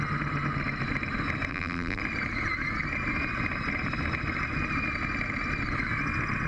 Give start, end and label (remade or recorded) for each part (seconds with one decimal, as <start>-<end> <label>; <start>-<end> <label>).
0.0-1.5 recorded; 1.5-2.0 remade; 2.0-6.5 recorded